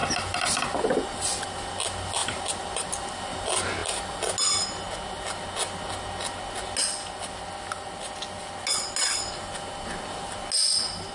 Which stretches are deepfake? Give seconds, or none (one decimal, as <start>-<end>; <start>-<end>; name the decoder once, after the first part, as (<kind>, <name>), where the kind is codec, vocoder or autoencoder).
2.2-2.9 (vocoder, BigVGAN v2)